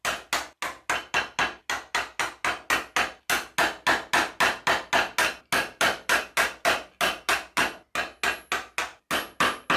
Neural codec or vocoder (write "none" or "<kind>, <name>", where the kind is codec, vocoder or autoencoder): none